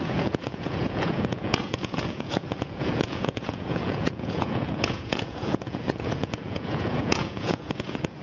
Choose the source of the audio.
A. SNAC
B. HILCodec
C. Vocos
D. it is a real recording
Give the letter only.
C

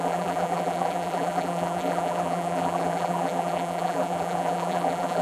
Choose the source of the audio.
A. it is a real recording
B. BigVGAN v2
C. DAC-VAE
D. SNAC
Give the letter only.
B